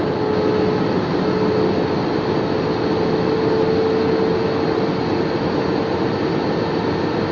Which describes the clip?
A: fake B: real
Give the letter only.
B